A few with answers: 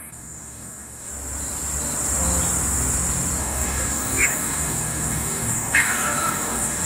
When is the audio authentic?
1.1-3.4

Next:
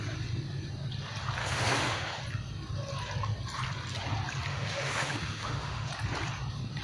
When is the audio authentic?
0.0-1.4; 2.2-4.5; 5.9-6.8

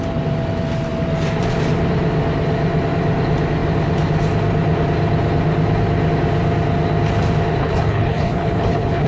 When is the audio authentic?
0.0-7.6